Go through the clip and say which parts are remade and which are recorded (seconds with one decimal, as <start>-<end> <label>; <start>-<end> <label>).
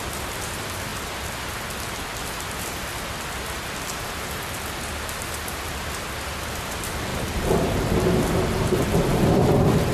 0.0-9.1 recorded; 9.1-9.9 remade